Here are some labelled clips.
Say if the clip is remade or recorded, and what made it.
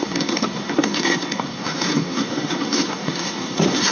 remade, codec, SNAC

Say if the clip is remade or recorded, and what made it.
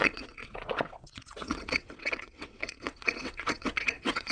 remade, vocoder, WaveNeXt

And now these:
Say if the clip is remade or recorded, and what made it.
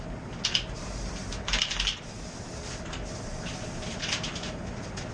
recorded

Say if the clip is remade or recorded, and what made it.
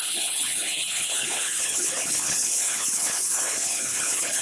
remade, codec, HILCodec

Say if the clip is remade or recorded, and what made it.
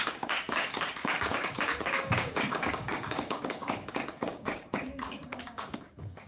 remade, codec, DAC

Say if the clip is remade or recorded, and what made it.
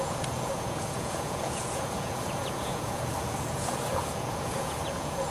remade, vocoder, Vocos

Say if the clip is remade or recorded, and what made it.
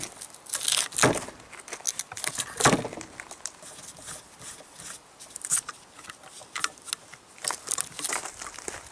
recorded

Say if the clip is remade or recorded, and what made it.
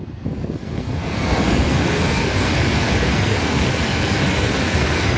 remade, codec, SNAC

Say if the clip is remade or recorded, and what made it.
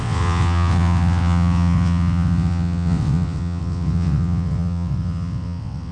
remade, vocoder, WaveNeXt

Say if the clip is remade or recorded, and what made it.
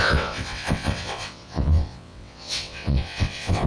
remade, vocoder, WaveNeXt